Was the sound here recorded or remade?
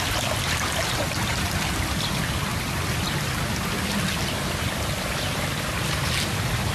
recorded